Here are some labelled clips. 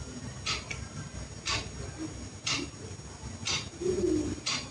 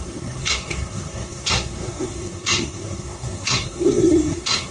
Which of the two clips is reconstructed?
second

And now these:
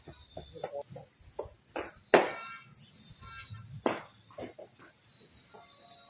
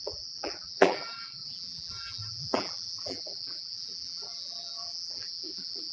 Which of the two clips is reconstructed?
second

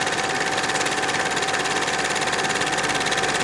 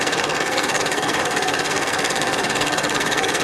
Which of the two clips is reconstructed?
second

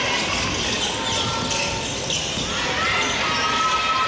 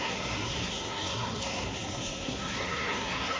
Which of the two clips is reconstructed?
second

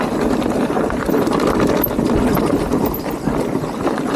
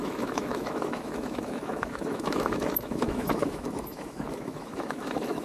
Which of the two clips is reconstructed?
second